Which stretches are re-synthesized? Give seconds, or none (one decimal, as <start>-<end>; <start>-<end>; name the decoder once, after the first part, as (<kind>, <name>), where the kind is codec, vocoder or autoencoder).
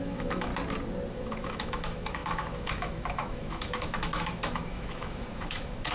0.0-0.5 (autoencoder, DAC-VAE); 1.1-5.9